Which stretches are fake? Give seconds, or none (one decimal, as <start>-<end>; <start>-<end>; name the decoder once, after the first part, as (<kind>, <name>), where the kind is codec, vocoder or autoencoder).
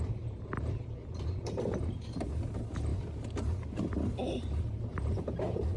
none